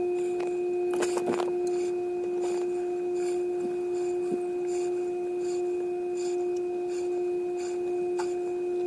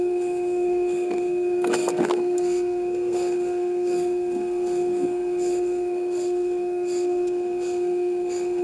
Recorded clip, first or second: first